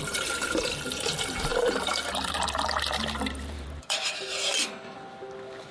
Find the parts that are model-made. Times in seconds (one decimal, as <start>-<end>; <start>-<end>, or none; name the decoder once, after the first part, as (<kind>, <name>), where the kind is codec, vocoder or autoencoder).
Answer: 0.0-4.5 (vocoder, BigVGAN v2)